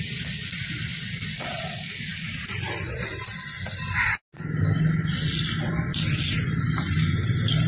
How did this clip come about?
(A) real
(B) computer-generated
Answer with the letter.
A